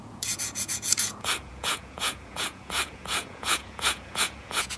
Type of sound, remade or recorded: remade